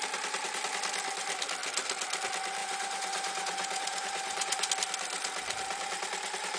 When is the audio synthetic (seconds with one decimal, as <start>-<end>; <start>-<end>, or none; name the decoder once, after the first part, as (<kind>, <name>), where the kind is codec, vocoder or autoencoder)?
2.6-4.7 (vocoder, Vocos)